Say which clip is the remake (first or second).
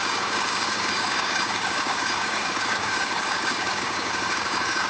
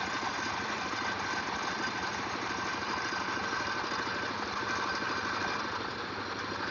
first